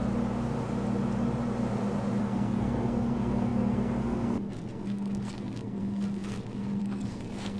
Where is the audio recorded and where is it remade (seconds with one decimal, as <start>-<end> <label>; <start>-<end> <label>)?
0.0-2.2 recorded; 2.2-7.6 remade